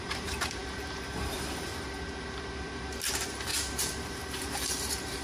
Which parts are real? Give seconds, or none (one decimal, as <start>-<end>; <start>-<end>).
1.7-3.1